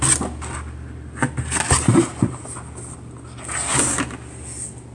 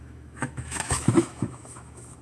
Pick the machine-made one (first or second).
second